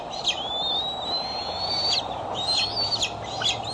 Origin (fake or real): real